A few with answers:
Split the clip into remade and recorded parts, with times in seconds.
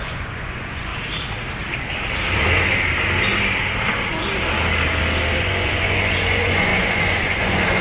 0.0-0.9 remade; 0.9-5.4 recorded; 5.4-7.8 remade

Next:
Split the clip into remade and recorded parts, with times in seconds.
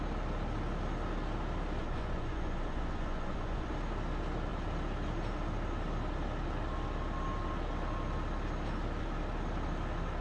0.0-1.8 recorded; 1.8-3.7 remade; 3.7-10.2 recorded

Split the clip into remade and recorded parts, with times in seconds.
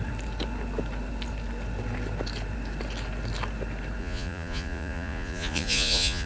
0.0-4.0 recorded; 4.0-6.3 remade